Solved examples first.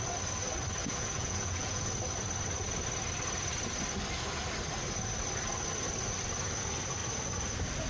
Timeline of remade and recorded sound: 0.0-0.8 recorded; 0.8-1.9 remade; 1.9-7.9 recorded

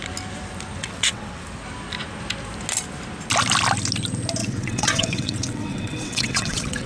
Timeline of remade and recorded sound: 0.0-0.8 recorded; 0.8-1.4 remade; 1.4-4.4 recorded; 4.4-6.9 remade

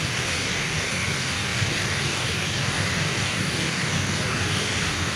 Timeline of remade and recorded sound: 0.0-5.2 remade

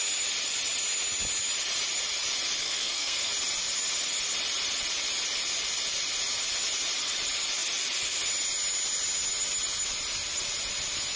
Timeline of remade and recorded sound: 0.0-2.6 recorded; 2.6-3.3 remade; 3.3-11.2 recorded

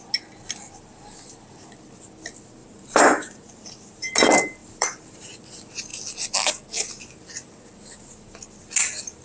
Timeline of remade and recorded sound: 0.0-2.6 recorded; 2.6-4.1 remade; 4.1-4.6 recorded; 4.6-5.4 remade; 5.4-9.2 recorded

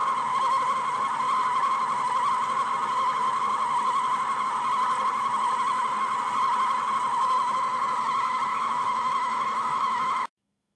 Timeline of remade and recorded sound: 0.0-8.5 recorded; 8.5-10.8 remade